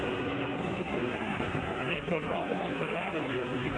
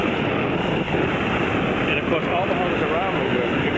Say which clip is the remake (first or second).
first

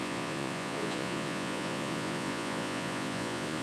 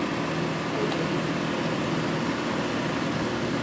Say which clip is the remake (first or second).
first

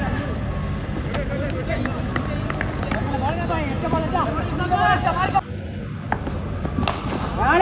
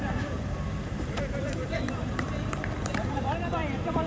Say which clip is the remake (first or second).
second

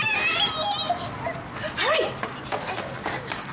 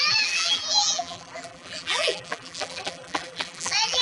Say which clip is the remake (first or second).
second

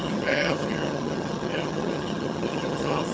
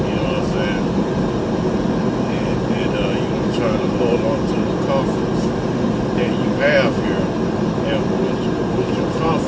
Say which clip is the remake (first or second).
first